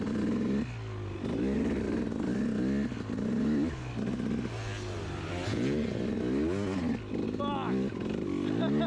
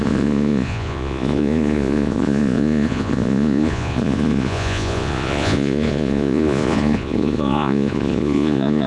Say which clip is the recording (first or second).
first